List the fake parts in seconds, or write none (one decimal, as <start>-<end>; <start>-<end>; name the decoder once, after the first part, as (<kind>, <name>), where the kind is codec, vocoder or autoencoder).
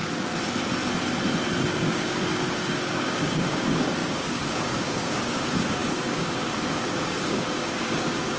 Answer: 1.7-8.4 (codec, DAC)